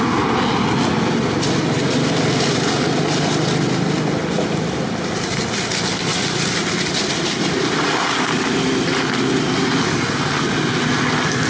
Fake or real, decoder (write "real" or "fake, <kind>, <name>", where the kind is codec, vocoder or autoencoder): real